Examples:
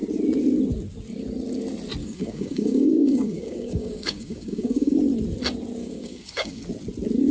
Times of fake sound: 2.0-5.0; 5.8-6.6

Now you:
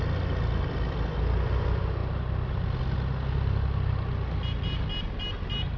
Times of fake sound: none

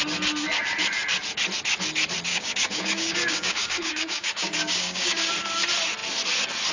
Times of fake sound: 2.3-5.3

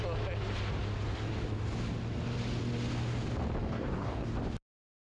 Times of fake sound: 3.6-4.3

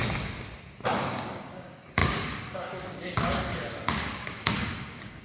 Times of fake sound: 1.0-5.2

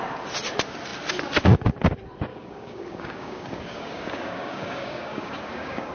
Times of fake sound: 2.3-5.9

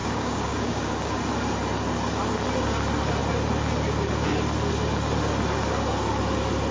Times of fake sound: 0.0-1.2

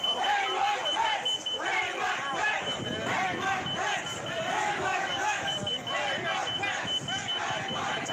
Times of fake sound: 4.5-5.6